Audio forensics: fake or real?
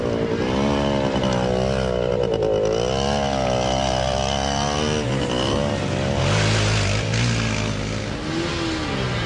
real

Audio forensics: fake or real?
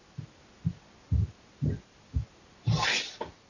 real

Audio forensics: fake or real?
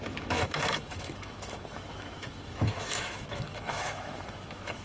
fake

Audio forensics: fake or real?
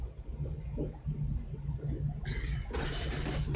real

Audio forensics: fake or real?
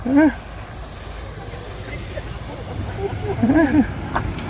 real